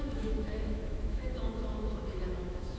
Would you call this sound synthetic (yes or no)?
yes